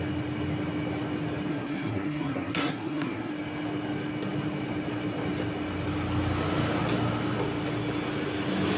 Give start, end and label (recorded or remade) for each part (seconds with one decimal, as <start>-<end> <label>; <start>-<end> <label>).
0.0-1.5 recorded; 1.5-3.3 remade; 3.3-8.8 recorded